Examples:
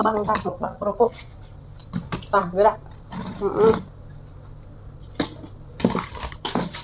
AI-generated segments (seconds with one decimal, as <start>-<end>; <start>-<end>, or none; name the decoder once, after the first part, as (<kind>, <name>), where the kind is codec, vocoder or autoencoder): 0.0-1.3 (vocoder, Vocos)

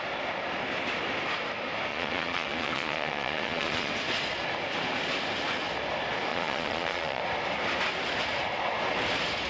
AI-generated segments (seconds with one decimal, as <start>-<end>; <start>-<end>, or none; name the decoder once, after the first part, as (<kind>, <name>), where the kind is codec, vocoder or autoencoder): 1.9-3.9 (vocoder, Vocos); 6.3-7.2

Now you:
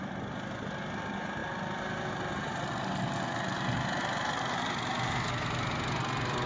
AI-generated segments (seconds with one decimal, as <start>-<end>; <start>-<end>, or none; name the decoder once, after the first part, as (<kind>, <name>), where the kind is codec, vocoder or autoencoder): none

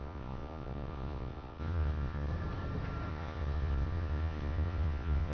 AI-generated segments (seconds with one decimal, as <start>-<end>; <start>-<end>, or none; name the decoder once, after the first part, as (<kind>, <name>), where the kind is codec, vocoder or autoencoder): 0.0-2.3 (vocoder, Vocos); 3.1-5.3

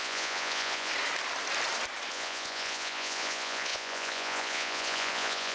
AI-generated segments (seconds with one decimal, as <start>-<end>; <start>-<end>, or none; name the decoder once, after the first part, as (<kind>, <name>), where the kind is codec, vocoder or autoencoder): 0.0-0.9 (vocoder, Vocos); 2.1-5.5

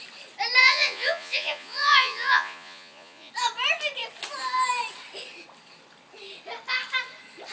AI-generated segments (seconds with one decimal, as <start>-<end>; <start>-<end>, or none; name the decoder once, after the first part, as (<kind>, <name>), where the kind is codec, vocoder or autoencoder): 0.6-3.3 (vocoder, Vocos)